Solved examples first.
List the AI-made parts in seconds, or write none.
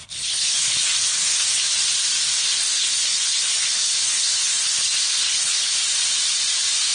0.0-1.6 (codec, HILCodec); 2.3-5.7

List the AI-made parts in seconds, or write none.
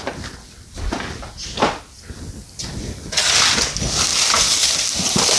none